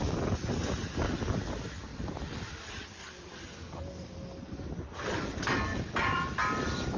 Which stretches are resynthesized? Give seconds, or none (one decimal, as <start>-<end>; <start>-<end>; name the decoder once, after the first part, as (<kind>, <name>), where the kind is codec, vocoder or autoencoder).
1.9-3.1 (vocoder, BigVGAN v2); 5.7-7.0